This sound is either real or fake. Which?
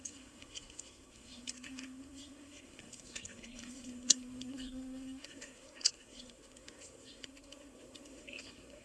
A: fake